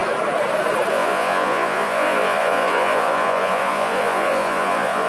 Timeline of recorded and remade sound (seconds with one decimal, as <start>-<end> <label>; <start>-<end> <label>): 0.0-0.9 recorded; 0.9-5.1 remade